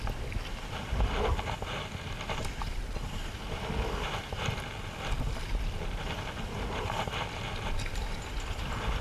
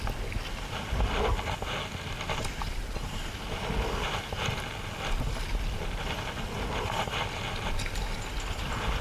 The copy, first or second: first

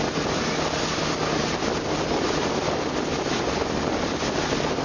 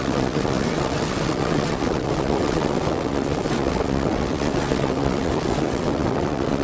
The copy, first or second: second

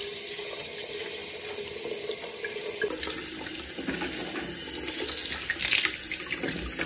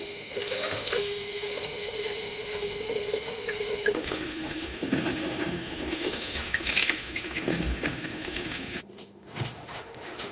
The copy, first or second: second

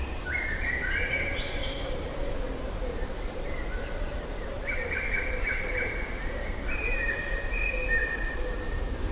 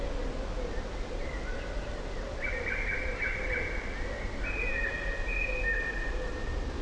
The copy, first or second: first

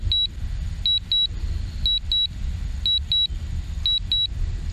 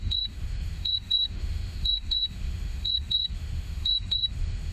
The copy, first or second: second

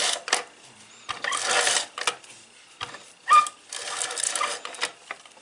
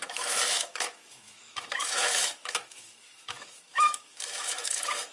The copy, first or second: second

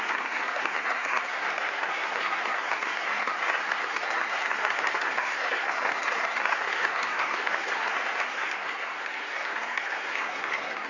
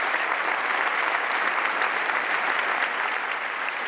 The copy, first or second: first